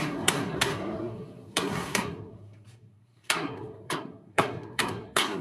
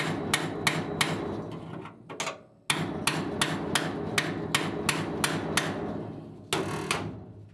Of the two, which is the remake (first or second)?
first